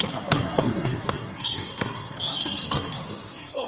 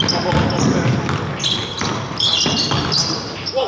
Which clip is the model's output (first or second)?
first